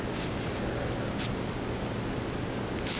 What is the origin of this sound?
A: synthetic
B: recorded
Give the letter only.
B